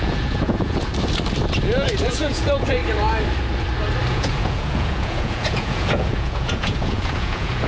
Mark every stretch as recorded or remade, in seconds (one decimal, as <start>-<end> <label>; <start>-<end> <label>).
0.0-0.9 remade; 0.9-2.0 recorded; 2.0-2.8 remade; 2.8-4.1 recorded; 4.1-7.7 remade